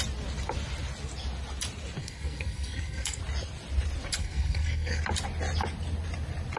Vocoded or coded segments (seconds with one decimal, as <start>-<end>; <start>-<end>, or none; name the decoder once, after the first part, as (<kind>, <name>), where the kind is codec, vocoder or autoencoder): 2.0-3.2 (codec, SNAC); 4.2-5.0